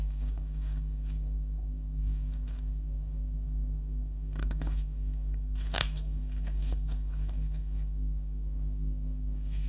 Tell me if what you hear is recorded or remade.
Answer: remade